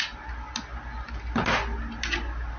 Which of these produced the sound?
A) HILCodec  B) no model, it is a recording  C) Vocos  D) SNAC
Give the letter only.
B